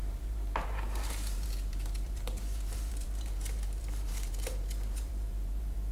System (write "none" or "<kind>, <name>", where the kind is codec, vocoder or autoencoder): vocoder, BigVGAN v2